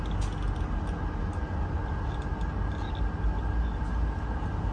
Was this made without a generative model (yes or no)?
yes